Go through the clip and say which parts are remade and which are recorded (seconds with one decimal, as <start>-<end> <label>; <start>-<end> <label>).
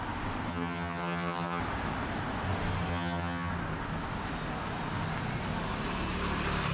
0.0-0.5 recorded; 0.5-1.6 remade; 1.6-2.9 recorded; 2.9-3.5 remade; 3.5-6.7 recorded